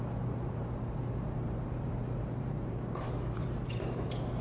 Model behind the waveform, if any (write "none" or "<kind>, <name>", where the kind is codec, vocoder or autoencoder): vocoder, BigVGAN v2